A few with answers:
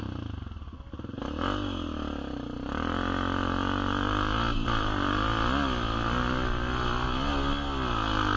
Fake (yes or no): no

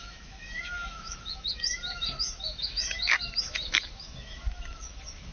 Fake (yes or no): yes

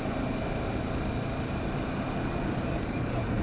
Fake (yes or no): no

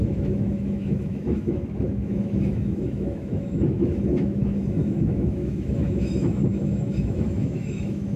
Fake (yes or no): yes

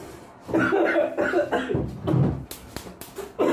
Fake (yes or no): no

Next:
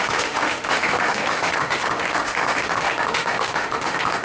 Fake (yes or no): yes